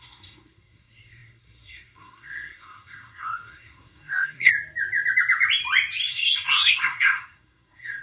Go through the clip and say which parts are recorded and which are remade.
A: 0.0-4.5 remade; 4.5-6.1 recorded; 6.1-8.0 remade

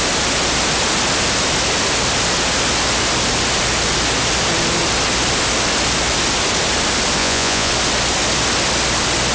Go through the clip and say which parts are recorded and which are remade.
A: 0.0-7.2 recorded; 7.2-7.7 remade; 7.7-9.3 recorded

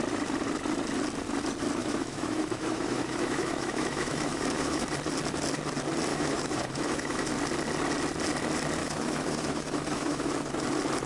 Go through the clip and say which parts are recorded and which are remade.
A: 0.0-1.8 recorded; 1.8-4.9 remade; 4.9-6.1 recorded; 6.1-7.3 remade; 7.3-8.8 recorded; 8.8-10.3 remade; 10.3-11.1 recorded